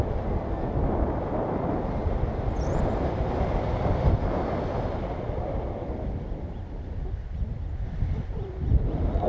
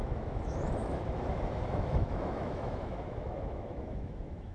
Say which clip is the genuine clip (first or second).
first